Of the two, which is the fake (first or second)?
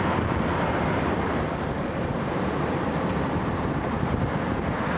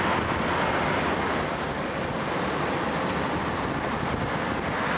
first